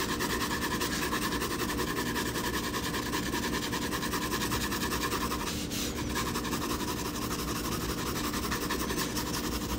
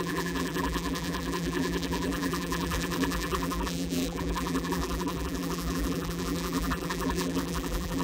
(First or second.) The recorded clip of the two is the first